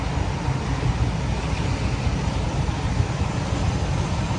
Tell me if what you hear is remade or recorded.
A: recorded